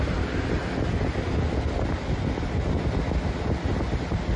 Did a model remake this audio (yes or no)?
no